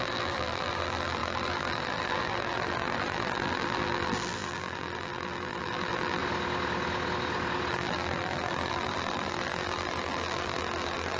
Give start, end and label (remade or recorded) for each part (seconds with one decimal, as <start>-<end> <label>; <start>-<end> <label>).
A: 0.0-6.2 remade; 6.2-7.7 recorded; 7.7-11.2 remade